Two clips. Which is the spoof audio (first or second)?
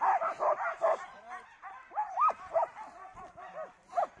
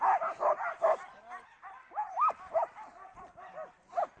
first